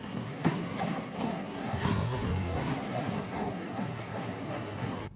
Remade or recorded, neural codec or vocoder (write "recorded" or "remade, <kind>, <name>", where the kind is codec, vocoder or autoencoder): remade, codec, SNAC